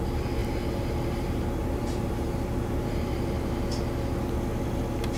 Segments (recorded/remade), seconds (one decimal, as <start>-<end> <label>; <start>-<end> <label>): 0.0-0.4 recorded; 0.4-3.5 remade; 3.5-5.2 recorded